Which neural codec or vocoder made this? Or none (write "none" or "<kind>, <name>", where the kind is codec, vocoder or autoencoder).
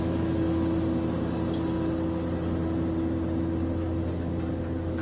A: none